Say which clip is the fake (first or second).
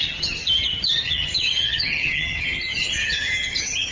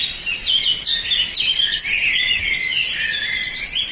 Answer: first